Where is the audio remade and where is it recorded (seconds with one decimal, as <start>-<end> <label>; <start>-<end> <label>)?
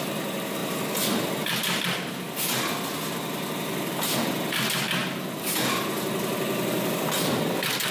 0.0-7.9 recorded